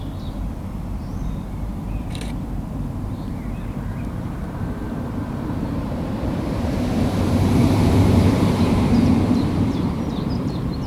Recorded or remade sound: remade